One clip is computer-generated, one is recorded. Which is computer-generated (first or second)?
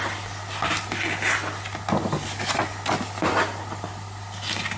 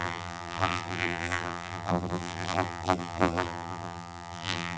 second